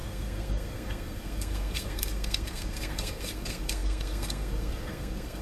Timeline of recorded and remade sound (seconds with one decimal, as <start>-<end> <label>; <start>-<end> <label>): 0.0-5.4 remade